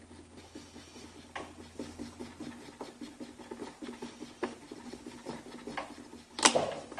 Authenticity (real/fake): real